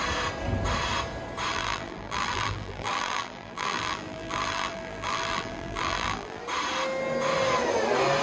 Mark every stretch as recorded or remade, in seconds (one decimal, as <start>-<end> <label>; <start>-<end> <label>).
0.0-1.5 recorded; 1.5-6.4 remade; 6.4-8.2 recorded

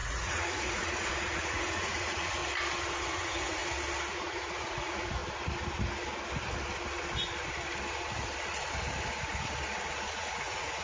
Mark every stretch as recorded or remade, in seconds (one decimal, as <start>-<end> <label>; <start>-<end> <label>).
0.0-2.4 remade; 2.4-3.0 recorded; 3.0-3.6 remade; 3.6-4.1 recorded; 4.1-5.2 remade; 5.2-10.1 recorded; 10.1-10.8 remade

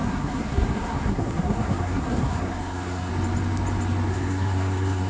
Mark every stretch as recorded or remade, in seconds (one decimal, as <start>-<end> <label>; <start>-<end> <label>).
0.0-3.1 remade; 3.1-4.1 recorded; 4.1-5.1 remade

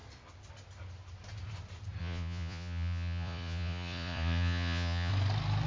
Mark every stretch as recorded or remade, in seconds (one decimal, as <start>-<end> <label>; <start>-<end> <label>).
0.0-2.0 recorded; 2.0-5.1 remade; 5.1-5.7 recorded